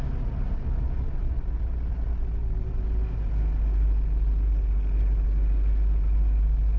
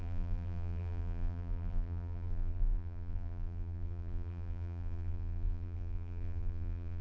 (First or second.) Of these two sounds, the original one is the first